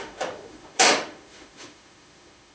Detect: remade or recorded remade